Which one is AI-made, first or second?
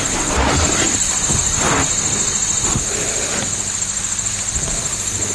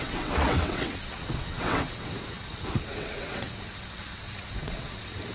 second